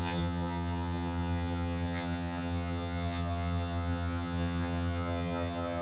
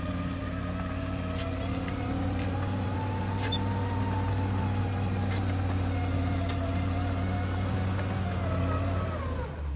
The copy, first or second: first